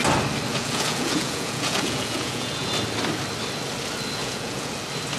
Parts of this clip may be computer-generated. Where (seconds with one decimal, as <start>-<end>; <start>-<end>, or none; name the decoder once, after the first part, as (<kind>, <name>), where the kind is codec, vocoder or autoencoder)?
0.5-2.7 (vocoder, Vocos); 4.2-4.7